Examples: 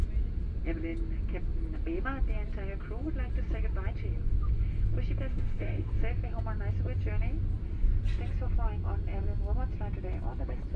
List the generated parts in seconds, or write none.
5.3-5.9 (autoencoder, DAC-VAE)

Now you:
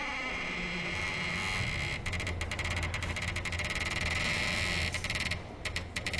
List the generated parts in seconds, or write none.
none

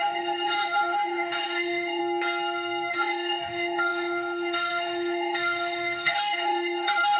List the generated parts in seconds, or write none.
0.0-2.0 (autoencoder, DAC-VAE); 2.9-7.2

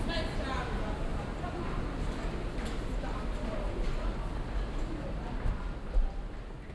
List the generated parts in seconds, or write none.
none

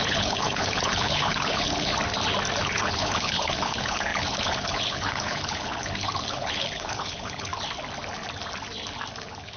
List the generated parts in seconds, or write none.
0.0-1.9 (codec, HILCodec); 2.6-7.5; 9.2-9.6